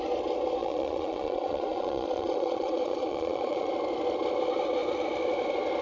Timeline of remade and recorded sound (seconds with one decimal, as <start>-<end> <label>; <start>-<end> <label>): 0.0-0.6 recorded; 0.6-3.7 remade; 3.7-5.8 recorded